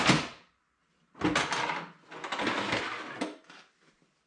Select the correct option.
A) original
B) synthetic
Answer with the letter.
A